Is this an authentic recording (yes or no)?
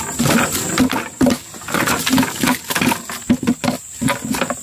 yes